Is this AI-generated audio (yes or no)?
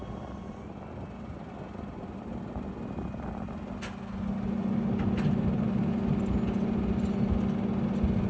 no